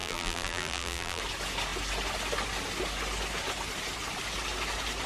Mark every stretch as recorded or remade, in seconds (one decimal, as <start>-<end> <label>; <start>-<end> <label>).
0.0-1.2 remade; 1.2-5.1 recorded